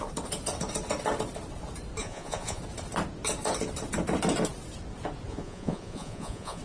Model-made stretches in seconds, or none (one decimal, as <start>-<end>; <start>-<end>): 2.0-2.6; 5.3-6.6